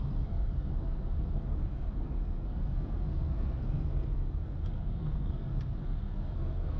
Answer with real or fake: fake